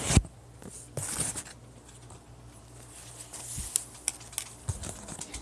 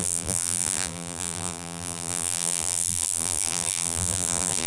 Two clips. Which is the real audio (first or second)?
first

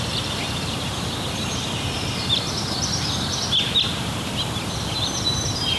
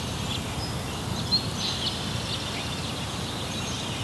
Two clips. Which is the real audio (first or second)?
second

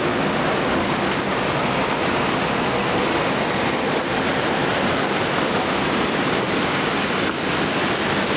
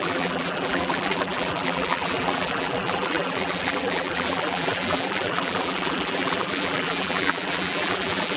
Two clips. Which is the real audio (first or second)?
first